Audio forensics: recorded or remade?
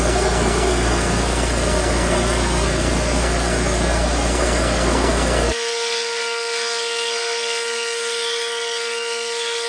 remade